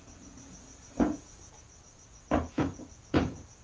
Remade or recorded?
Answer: remade